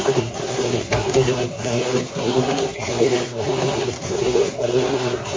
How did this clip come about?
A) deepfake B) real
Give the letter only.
A